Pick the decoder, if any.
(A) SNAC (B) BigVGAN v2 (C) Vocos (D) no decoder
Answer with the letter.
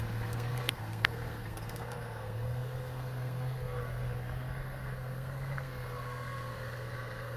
A